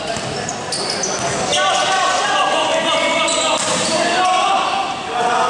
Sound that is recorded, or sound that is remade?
recorded